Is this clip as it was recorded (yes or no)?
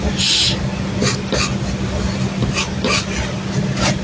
yes